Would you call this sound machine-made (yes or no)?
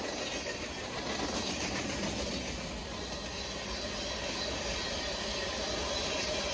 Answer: no